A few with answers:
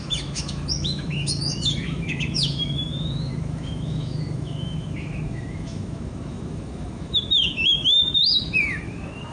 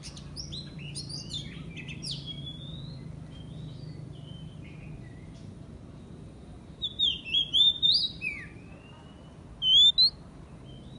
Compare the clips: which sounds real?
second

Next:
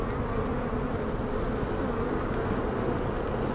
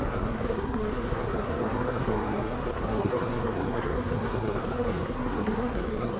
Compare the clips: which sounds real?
first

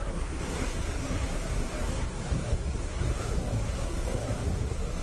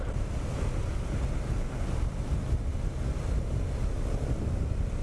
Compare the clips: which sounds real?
second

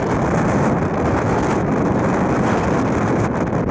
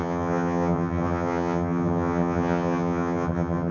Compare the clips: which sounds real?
first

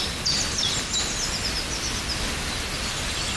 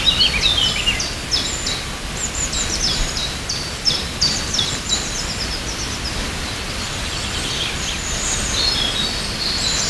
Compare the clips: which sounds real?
first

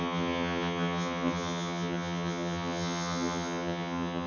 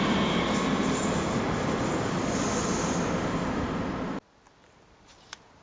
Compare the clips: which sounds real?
second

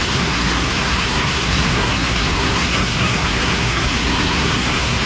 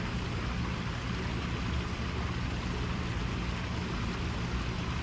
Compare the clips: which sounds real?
second